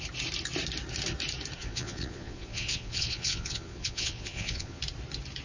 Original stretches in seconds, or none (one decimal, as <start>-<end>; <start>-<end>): 0.0-1.6; 4.8-5.4